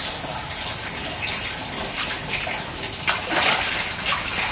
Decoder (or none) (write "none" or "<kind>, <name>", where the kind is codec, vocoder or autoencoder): none